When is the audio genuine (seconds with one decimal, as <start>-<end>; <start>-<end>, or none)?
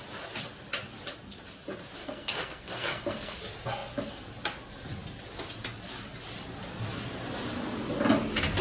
0.0-2.0; 3.4-8.6